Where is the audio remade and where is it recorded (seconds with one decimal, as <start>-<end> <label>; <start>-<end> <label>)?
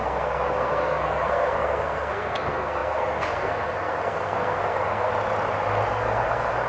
0.0-5.1 remade; 5.1-5.9 recorded; 5.9-6.7 remade